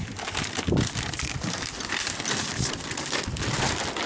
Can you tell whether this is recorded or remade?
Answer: recorded